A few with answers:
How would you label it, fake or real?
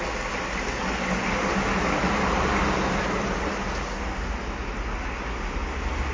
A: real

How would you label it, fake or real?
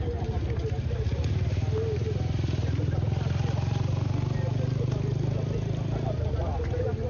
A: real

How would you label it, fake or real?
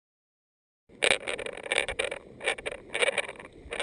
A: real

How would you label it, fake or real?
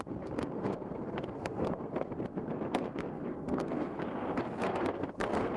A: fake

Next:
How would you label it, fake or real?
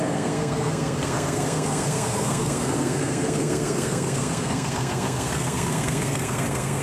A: fake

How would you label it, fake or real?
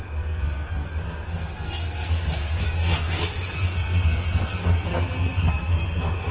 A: fake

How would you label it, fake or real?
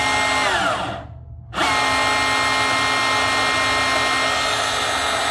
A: real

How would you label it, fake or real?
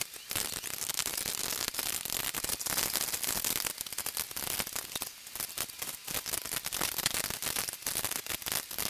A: real